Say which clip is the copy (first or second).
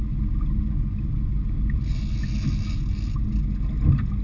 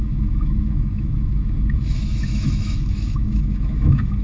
second